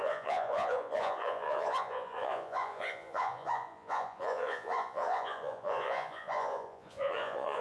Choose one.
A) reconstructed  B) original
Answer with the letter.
A